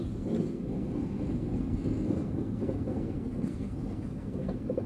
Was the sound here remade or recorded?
remade